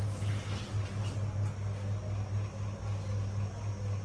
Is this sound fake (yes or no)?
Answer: no